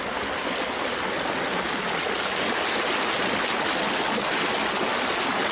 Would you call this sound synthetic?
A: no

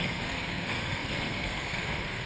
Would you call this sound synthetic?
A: yes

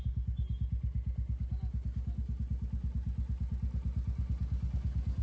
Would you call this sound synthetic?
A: no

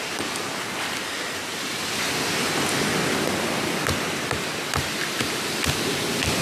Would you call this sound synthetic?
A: no